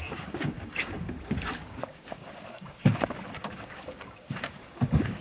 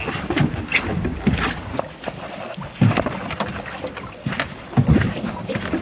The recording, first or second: second